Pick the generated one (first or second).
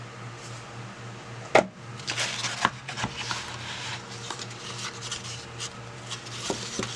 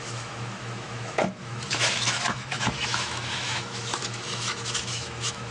second